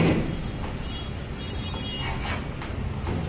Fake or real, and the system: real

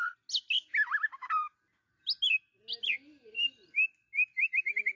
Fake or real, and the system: real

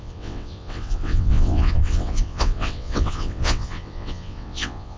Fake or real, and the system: fake, vocoder, WaveNeXt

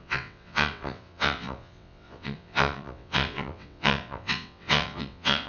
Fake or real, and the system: fake, vocoder, WaveNeXt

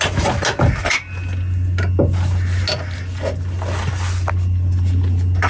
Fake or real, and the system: real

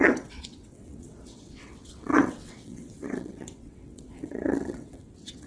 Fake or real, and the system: fake, vocoder, WaveNeXt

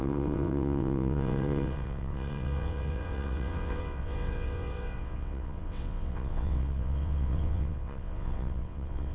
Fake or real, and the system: fake, vocoder, WaveNeXt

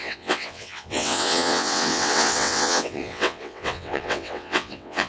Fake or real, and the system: fake, vocoder, WaveNeXt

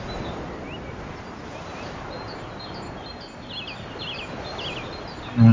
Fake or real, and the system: real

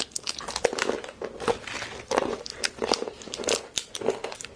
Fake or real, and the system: real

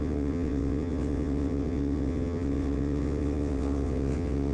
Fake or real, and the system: fake, vocoder, WaveNeXt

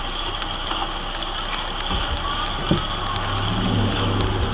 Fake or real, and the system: real